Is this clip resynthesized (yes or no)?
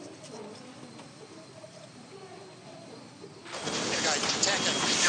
no